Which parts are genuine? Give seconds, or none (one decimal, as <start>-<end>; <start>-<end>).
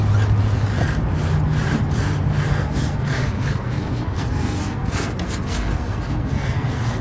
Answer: 0.0-2.5